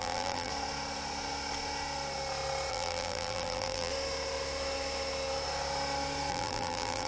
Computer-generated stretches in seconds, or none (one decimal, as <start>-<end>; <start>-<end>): 0.0-0.5; 2.7-3.9; 6.3-7.1